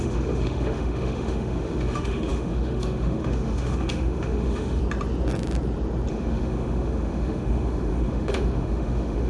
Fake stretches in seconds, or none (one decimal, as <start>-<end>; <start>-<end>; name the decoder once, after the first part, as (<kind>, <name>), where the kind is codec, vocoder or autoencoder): 0.0-4.8 (autoencoder, DAC-VAE); 6.1-9.3